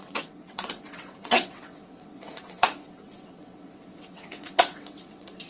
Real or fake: fake